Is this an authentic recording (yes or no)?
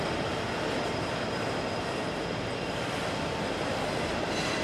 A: yes